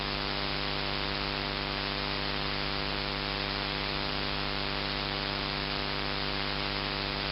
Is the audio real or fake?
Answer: real